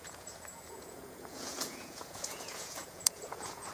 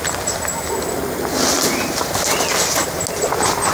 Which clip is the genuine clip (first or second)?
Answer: second